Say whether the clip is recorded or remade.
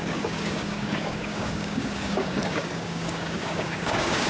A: remade